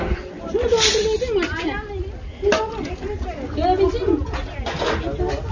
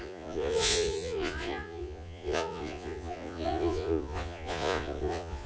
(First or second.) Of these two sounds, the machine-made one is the second